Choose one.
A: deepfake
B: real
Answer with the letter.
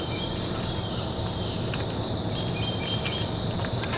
B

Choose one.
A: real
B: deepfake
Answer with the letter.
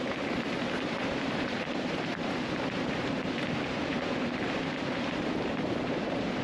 B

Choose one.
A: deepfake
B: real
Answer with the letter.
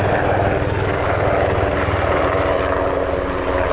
B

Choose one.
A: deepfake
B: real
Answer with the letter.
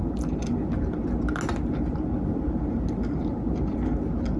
B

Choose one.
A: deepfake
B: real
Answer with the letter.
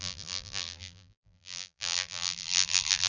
A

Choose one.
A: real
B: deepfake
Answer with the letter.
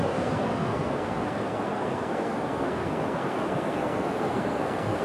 B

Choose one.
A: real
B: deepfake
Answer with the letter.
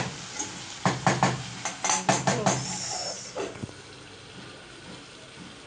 A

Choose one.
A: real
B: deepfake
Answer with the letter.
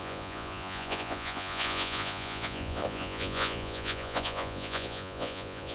B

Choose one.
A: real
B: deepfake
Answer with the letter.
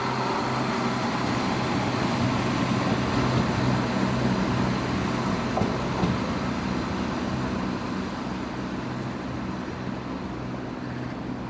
A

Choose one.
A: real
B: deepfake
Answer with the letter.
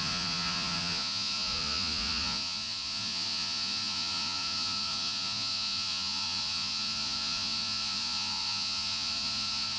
B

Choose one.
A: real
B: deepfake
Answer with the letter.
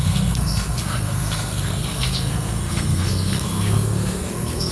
B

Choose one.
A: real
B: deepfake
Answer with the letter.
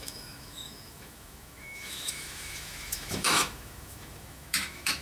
B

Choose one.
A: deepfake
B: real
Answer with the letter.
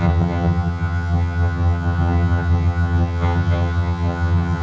A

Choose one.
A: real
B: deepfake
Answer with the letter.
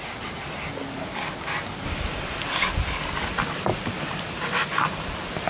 A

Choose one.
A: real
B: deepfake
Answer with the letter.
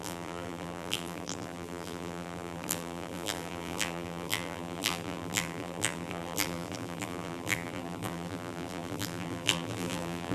B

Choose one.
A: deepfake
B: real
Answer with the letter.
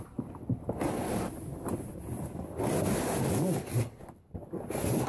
B